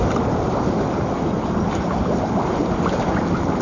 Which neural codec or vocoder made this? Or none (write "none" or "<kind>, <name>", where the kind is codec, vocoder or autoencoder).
none